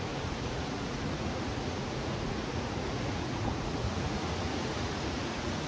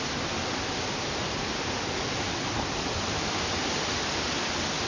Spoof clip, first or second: first